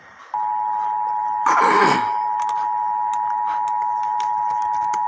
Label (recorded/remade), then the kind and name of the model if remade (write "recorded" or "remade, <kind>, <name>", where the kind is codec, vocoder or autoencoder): recorded